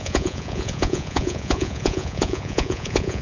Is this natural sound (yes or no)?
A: no